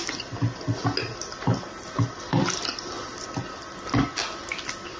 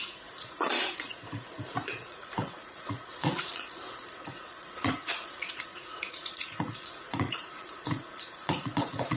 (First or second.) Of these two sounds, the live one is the first